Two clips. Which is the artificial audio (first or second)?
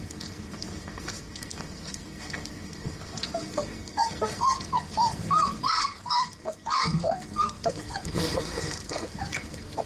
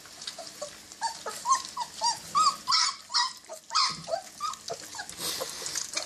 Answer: first